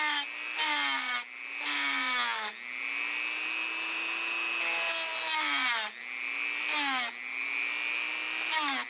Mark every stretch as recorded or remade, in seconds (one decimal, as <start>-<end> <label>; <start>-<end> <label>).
0.0-8.9 recorded